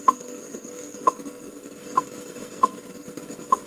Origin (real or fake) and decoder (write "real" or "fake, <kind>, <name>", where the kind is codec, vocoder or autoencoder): fake, codec, SNAC